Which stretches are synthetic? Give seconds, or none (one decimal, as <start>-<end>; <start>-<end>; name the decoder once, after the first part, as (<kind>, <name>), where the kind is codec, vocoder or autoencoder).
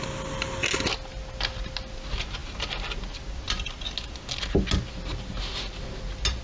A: none